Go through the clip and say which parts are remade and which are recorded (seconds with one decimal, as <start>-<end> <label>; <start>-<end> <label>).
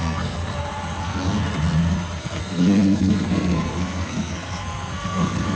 0.0-0.4 remade; 0.4-1.0 recorded; 1.0-1.4 remade; 1.4-2.2 recorded; 2.2-5.6 remade